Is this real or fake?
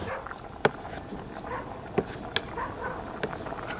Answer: real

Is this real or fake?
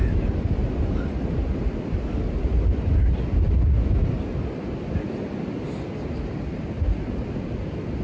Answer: real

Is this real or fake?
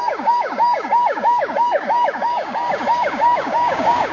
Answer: fake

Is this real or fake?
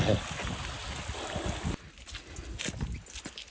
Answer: real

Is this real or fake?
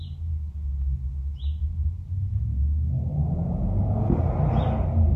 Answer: real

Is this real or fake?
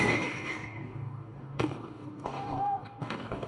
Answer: fake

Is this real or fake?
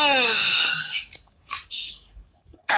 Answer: fake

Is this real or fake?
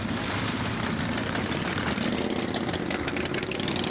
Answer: real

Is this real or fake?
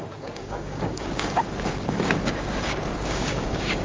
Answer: fake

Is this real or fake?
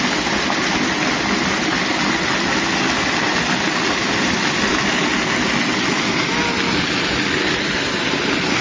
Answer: real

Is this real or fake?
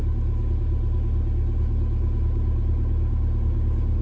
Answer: real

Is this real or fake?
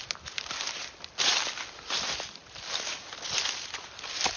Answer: real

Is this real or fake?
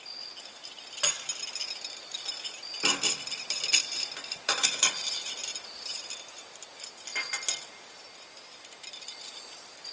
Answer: real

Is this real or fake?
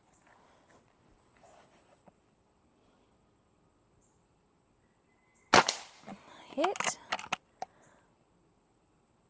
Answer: real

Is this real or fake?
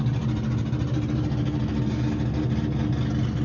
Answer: real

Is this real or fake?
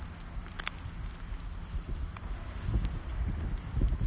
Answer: real